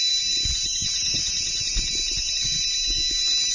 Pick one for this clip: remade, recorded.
recorded